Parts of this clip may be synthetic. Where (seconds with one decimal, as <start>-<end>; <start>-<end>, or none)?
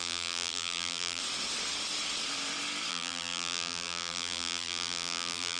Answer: 0.0-1.2; 2.9-5.6